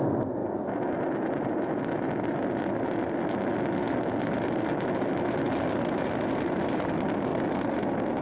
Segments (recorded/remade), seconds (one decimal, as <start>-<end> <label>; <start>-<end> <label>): 0.0-8.2 recorded

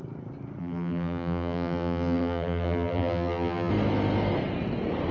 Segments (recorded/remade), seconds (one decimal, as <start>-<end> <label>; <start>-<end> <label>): 0.0-0.6 recorded; 0.6-3.7 remade; 3.7-5.1 recorded